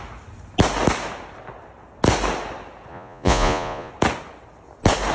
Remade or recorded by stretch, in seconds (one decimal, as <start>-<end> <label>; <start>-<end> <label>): 0.0-2.9 recorded; 2.9-3.9 remade; 3.9-5.1 recorded